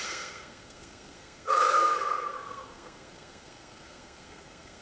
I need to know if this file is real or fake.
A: fake